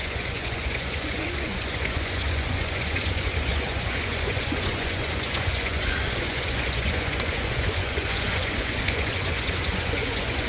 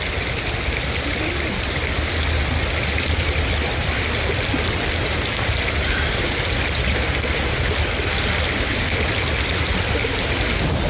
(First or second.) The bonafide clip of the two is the second